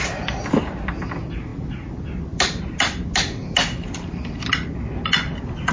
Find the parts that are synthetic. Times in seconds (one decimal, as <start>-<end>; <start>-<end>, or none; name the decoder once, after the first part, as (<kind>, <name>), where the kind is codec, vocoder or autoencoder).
none

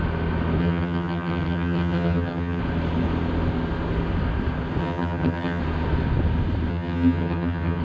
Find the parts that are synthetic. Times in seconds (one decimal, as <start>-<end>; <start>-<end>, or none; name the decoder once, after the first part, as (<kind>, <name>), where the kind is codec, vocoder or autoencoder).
0.6-2.6 (vocoder, HiFi-GAN); 4.8-5.6; 6.7-7.8

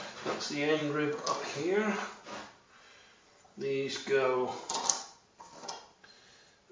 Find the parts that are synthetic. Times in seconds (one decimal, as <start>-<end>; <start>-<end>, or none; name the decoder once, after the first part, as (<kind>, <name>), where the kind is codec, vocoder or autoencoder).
none